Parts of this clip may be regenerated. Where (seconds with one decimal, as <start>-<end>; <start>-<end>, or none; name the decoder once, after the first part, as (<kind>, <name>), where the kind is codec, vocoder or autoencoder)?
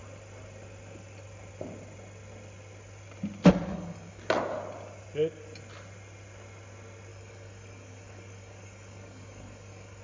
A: 3.7-4.2 (codec, DAC); 7.1-10.0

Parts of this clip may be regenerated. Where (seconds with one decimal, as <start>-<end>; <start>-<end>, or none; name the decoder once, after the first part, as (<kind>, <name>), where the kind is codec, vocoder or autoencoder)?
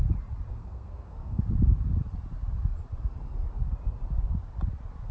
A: 0.6-1.4 (codec, SNAC)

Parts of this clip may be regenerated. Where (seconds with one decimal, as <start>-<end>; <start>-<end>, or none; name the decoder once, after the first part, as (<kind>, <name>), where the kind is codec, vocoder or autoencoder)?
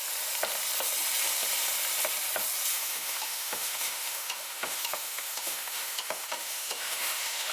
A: 2.7-7.5 (autoencoder, DAC-VAE)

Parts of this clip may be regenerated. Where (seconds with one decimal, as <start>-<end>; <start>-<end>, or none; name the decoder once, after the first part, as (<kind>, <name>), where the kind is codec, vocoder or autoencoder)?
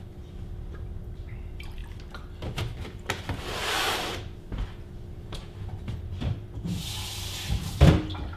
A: 0.0-8.4 (vocoder, BigVGAN v2)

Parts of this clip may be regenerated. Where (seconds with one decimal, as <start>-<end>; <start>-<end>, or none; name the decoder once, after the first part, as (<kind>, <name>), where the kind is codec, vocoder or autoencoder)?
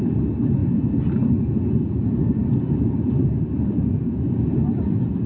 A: none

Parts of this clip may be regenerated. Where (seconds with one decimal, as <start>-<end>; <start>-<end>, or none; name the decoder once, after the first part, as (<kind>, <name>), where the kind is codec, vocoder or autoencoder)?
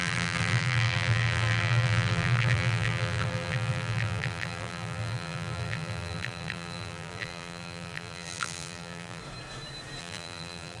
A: 0.0-9.2 (vocoder, BigVGAN v2); 10.0-10.8